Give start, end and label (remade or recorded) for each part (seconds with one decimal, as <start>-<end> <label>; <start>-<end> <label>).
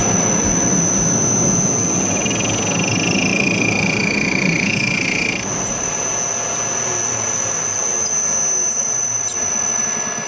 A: 0.0-3.3 recorded; 3.3-5.9 remade; 5.9-8.8 recorded; 8.8-9.5 remade; 9.5-10.3 recorded